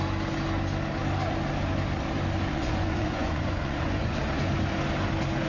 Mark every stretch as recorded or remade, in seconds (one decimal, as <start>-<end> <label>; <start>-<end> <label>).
0.0-2.5 recorded; 2.5-4.2 remade; 4.2-5.5 recorded